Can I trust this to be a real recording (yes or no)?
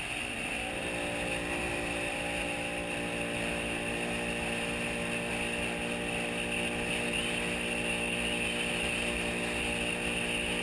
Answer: yes